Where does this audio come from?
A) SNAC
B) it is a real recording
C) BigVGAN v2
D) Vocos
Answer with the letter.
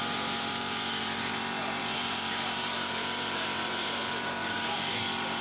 C